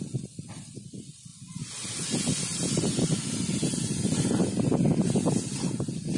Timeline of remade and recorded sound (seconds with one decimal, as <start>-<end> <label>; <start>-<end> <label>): 0.0-6.2 recorded